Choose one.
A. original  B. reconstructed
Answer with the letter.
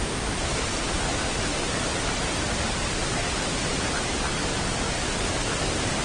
A